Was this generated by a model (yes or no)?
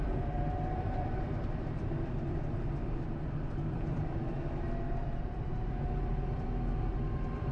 yes